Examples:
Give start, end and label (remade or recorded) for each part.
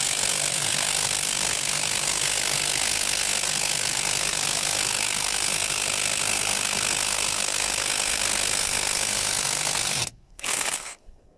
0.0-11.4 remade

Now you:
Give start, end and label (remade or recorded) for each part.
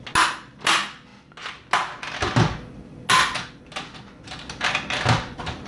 0.0-5.7 recorded